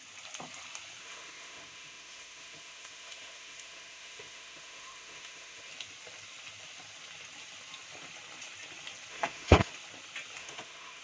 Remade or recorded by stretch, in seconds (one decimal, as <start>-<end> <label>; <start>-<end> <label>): 0.0-1.0 recorded; 1.0-5.7 remade; 5.7-9.1 recorded; 9.1-9.7 remade; 9.7-10.4 recorded; 10.4-11.0 remade